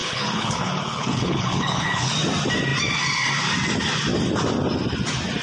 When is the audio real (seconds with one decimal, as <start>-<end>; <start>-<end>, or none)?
2.1-5.4